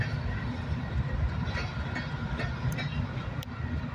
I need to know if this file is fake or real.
real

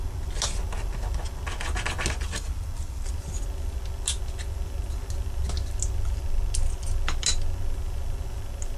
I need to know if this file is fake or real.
real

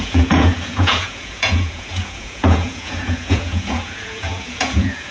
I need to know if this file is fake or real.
fake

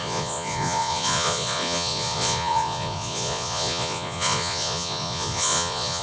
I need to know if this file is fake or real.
fake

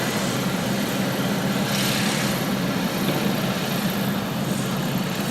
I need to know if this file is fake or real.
real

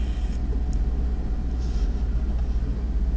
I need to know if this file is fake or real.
real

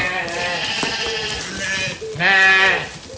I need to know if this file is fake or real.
real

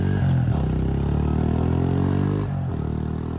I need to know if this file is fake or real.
real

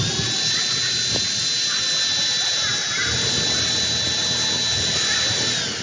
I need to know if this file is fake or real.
real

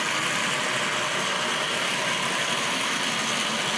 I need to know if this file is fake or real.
real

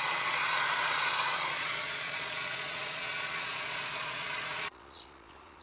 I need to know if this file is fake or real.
fake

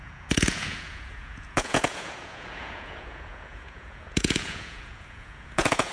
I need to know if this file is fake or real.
fake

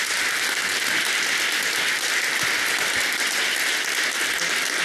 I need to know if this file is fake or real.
real